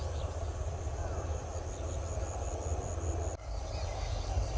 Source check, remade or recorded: recorded